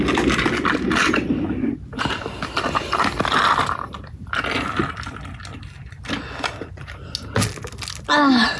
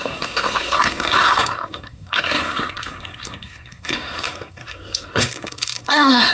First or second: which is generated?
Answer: second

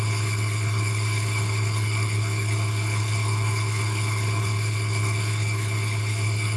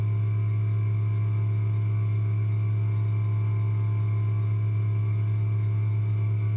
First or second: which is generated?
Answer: first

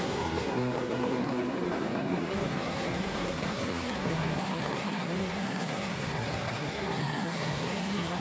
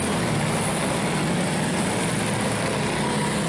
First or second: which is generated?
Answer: first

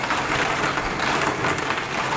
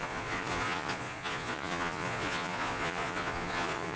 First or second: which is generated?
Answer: second